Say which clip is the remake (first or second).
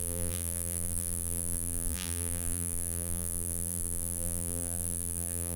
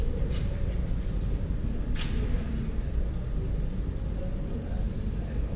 first